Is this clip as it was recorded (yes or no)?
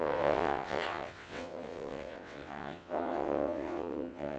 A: no